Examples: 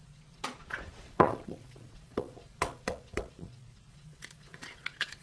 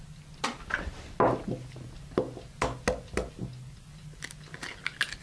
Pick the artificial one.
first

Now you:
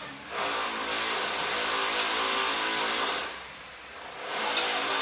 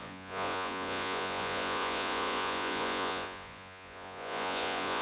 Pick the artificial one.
second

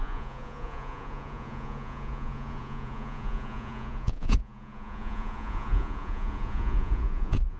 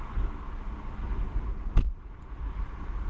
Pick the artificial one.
first